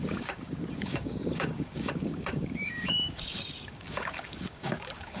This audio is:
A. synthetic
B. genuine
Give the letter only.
A